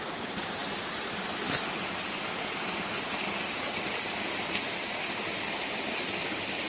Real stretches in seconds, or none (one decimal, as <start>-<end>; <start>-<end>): 0.0-6.7